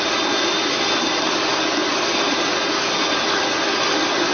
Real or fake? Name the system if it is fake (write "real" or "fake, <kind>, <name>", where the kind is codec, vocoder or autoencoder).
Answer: real